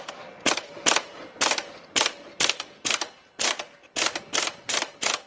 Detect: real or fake real